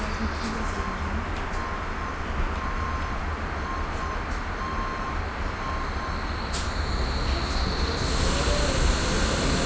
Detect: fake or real real